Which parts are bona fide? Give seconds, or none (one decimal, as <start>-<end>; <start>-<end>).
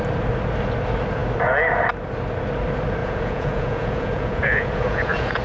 0.0-3.0